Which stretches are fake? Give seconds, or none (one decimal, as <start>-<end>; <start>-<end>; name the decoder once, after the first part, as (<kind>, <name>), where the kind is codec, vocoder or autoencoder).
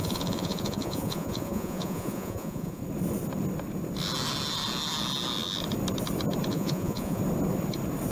0.0-2.8 (vocoder, Vocos); 6.5-7.2